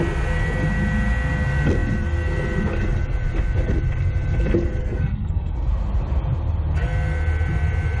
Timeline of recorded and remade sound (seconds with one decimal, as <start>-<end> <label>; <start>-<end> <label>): 0.0-4.8 recorded; 4.8-5.7 remade; 5.7-8.0 recorded